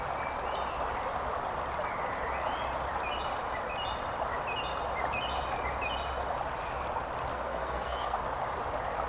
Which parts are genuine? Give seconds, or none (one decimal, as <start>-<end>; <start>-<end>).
0.0-7.3; 8.2-9.1